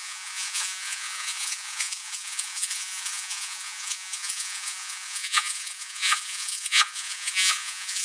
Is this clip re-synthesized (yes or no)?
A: yes